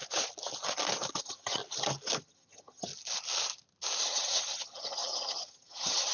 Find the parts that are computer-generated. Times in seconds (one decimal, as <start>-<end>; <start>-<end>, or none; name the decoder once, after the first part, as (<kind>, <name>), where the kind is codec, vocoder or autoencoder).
1.2-1.6 (vocoder, HiFi-GAN); 2.2-2.9; 4.0-6.1